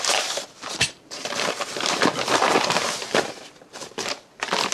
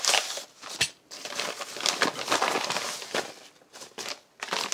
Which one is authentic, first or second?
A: second